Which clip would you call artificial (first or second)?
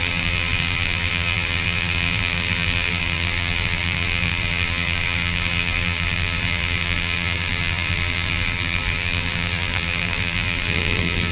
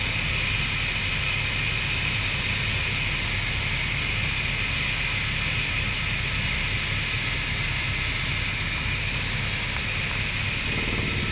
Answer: first